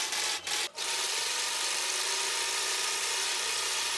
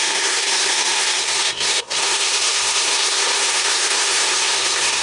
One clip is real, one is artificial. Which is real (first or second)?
first